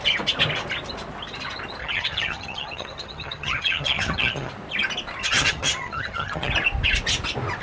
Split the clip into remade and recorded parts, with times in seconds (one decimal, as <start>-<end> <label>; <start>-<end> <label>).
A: 0.0-1.8 recorded; 1.8-4.5 remade; 4.5-5.2 recorded; 5.2-6.5 remade; 6.5-7.6 recorded

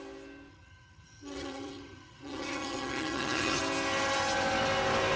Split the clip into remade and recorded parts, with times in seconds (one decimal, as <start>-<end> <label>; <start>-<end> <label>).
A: 0.0-0.5 recorded; 0.5-3.6 remade; 3.6-5.2 recorded

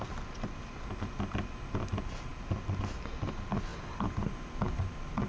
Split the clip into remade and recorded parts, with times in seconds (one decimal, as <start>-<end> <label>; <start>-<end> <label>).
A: 0.0-5.3 recorded

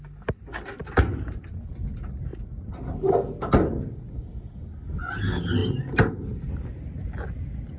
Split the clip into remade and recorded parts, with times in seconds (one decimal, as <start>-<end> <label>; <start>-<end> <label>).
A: 0.0-7.8 recorded